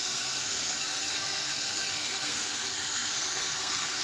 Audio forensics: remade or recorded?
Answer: remade